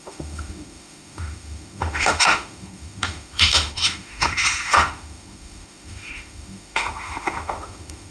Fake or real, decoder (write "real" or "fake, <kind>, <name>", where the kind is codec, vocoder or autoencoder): fake, autoencoder, DAC-VAE